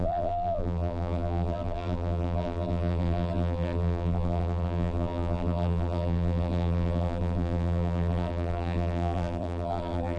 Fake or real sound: fake